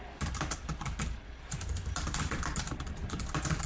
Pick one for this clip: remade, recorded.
remade